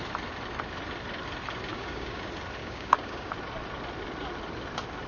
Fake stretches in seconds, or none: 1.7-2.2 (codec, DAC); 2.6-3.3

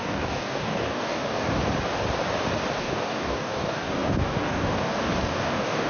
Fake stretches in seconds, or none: 0.0-1.6 (codec, DAC); 2.8-5.9

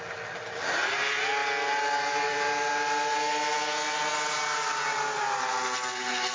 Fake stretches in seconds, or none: none